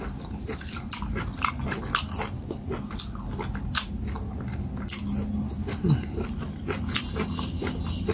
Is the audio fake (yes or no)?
no